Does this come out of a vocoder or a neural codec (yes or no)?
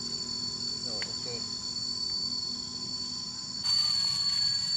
no